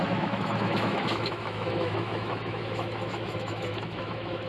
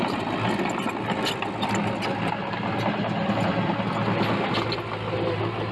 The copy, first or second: first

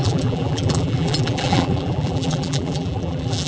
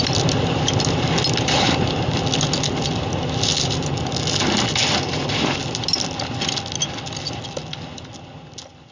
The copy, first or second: first